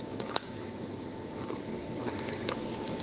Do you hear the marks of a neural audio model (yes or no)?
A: yes